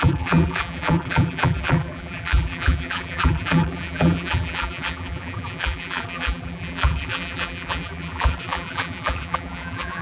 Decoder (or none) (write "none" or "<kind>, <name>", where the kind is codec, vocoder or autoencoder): vocoder, BigVGAN v2